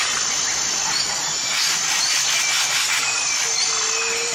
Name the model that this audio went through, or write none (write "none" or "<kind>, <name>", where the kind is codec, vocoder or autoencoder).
none